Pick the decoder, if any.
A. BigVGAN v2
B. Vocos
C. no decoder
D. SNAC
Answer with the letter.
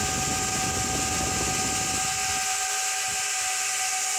C